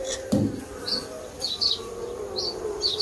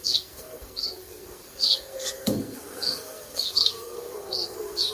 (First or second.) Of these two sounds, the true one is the first